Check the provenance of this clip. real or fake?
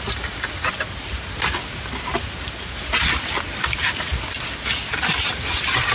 real